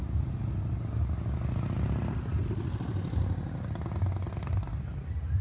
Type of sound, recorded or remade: recorded